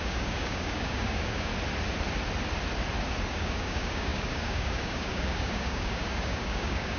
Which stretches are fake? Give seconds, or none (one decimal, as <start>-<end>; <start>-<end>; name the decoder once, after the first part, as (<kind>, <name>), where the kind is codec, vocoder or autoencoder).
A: 0.0-1.5 (codec, DAC); 3.3-7.0